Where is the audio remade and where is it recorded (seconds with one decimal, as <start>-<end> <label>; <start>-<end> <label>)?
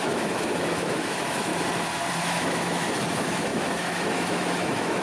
0.0-1.5 remade; 1.5-2.2 recorded; 2.2-5.0 remade